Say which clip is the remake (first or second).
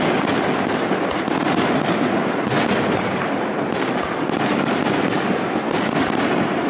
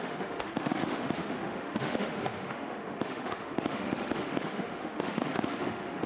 second